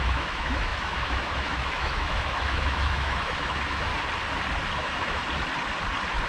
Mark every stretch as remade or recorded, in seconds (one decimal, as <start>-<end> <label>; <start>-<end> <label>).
0.0-3.9 remade; 3.9-4.7 recorded; 4.7-5.2 remade; 5.2-6.3 recorded